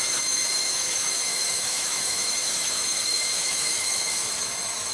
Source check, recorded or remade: remade